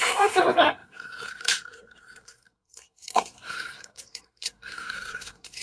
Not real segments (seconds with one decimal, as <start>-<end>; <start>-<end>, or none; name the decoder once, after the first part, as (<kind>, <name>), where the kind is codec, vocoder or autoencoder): 0.0-5.6 (codec, SNAC)